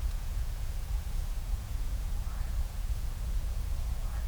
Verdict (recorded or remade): remade